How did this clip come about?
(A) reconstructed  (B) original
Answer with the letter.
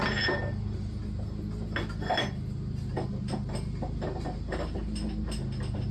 B